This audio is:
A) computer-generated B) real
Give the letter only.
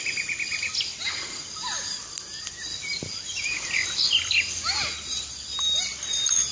B